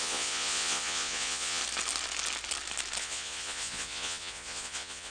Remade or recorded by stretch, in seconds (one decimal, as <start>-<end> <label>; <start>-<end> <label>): 0.0-1.6 remade; 1.6-3.0 recorded; 3.0-5.1 remade